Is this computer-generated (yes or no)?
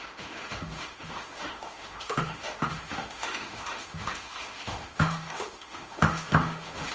yes